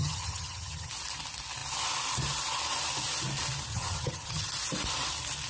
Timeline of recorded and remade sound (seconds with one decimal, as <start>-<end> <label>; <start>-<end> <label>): 0.0-0.9 remade; 0.9-3.7 recorded; 3.7-4.5 remade; 4.5-5.5 recorded